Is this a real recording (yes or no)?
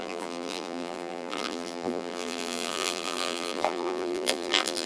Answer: no